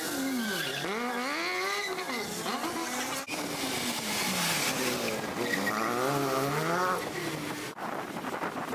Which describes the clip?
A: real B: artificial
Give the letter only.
A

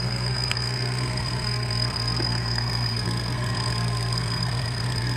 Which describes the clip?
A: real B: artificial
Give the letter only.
B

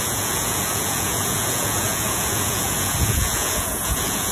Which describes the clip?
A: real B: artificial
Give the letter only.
B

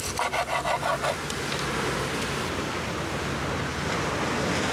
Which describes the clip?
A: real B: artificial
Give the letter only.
A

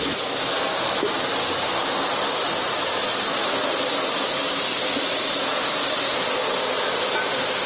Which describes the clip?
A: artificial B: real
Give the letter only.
B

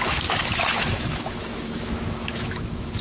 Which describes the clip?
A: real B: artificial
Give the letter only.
B